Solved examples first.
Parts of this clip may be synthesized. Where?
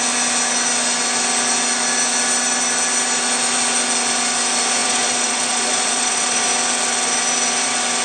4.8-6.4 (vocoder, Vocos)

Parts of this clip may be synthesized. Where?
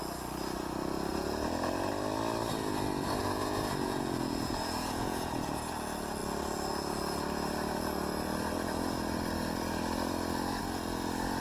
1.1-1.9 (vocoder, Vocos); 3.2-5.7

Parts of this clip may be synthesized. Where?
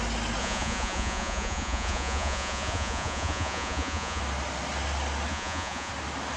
0.4-4.2 (vocoder, Vocos); 5.3-5.9